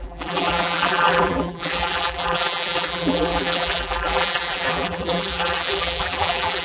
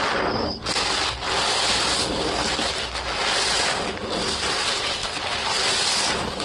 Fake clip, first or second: first